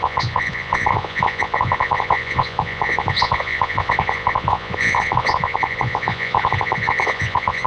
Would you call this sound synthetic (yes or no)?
yes